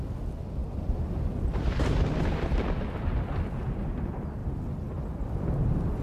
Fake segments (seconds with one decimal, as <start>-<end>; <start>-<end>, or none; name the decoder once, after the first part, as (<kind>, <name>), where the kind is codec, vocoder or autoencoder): none